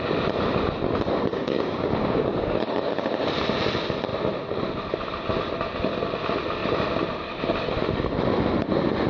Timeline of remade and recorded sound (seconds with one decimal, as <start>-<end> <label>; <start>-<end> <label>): 0.0-1.3 recorded; 1.3-3.3 remade; 3.3-9.1 recorded